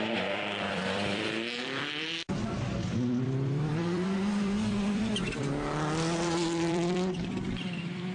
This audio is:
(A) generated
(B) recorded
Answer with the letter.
A